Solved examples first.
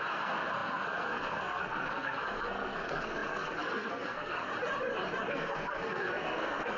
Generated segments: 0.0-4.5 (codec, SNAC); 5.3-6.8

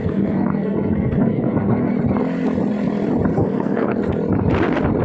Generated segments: 0.0-1.9 (codec, SNAC); 3.3-4.1

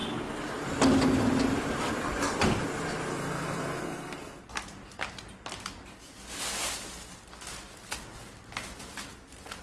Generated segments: 3.1-4.4 (codec, SNAC)

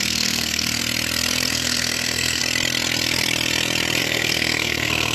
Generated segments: 0.0-0.8 (codec, SNAC); 1.5-2.4; 4.0-5.1

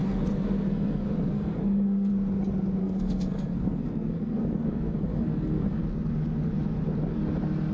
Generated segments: 0.0-2.1 (codec, SNAC); 2.8-5.8

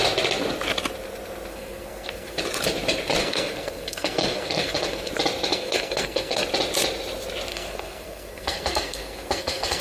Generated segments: 1.5-2.4 (codec, SNAC); 3.2-5.1; 5.5-6.4; 7.5-9.8